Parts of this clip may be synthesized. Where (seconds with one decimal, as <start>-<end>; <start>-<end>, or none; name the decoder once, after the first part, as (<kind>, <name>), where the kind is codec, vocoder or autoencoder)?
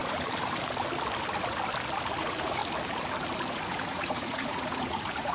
2.2-2.6 (vocoder, Vocos); 3.5-5.3